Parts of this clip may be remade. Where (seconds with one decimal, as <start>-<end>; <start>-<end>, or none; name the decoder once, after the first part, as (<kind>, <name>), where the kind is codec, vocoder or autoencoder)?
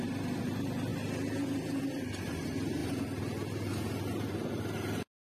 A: none